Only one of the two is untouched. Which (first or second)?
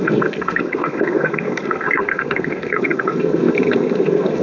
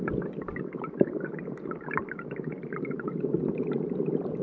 second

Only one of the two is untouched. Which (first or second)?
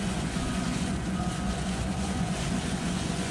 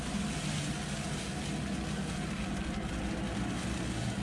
second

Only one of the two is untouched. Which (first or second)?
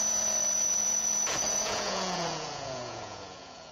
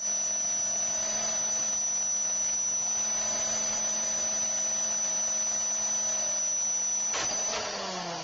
second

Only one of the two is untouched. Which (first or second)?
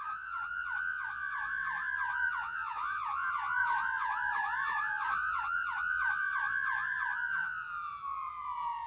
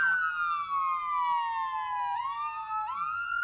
second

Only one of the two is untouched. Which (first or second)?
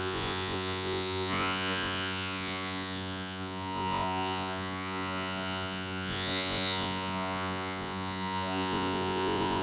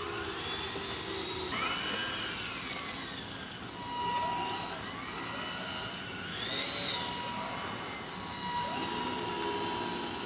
second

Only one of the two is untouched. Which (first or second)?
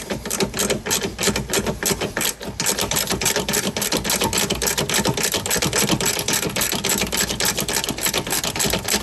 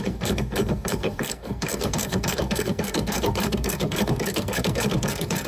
first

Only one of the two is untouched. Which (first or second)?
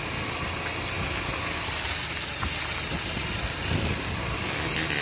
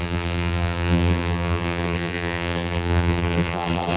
first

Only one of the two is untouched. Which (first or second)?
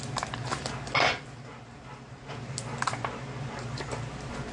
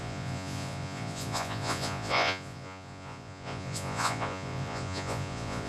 first